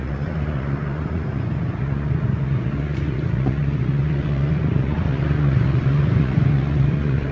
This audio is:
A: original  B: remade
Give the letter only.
B